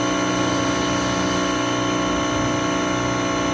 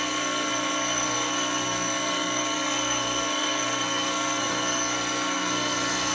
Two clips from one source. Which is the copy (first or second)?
second